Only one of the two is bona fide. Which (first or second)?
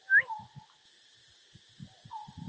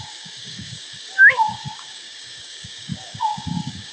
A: first